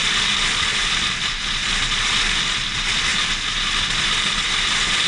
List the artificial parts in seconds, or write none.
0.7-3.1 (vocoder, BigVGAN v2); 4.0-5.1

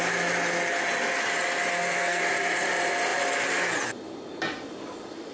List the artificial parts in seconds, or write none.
1.7-2.2 (codec, SNAC)